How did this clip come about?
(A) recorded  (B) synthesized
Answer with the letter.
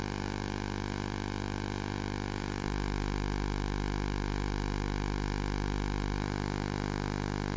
B